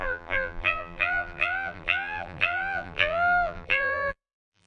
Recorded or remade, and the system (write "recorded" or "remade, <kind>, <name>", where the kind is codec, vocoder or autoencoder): remade, vocoder, BigVGAN v2